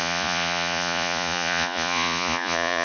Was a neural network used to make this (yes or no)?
yes